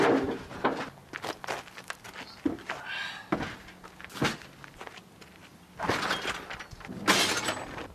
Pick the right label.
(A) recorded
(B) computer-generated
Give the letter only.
A